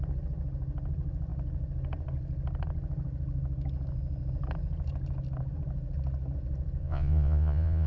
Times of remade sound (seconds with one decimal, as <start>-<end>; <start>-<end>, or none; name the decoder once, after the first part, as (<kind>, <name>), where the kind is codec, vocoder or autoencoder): 6.8-7.9 (vocoder, Vocos)